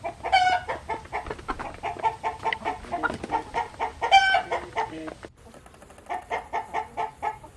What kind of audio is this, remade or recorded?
recorded